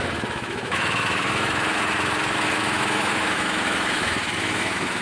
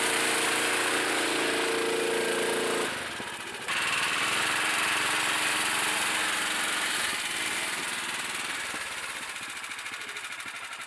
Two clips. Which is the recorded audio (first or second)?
second